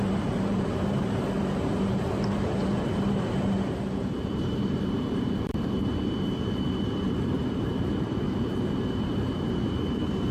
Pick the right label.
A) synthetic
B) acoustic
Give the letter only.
A